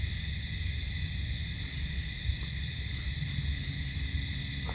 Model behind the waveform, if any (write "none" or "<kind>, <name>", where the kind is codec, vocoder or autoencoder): none